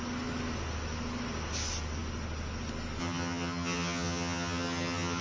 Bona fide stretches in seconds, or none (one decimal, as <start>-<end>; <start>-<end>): 0.0-3.0